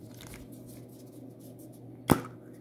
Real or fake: real